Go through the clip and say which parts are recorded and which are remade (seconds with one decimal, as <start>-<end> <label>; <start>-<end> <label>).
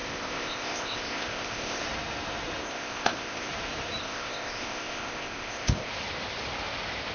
0.0-1.8 remade; 1.8-2.6 recorded; 2.6-3.5 remade; 3.5-4.0 recorded; 4.0-5.9 remade; 5.9-7.1 recorded